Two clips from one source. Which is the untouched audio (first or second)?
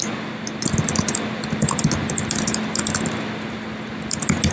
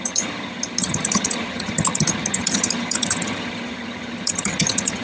first